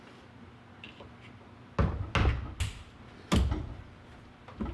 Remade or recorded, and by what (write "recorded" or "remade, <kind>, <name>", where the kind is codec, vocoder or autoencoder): recorded